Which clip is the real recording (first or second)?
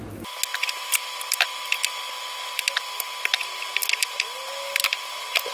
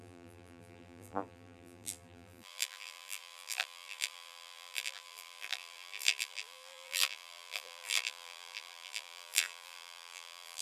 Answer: first